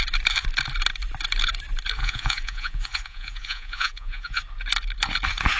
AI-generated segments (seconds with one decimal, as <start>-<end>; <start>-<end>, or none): 2.0-4.4